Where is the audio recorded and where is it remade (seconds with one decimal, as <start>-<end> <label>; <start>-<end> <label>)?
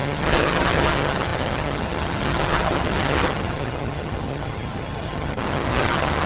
0.0-6.3 remade